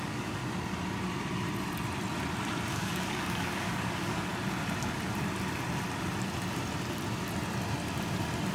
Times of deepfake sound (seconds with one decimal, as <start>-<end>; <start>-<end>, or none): 0.0-0.4; 2.7-4.3